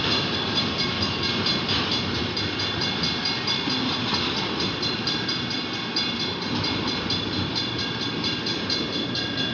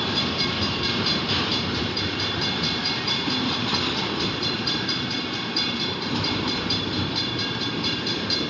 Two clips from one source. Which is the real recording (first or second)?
first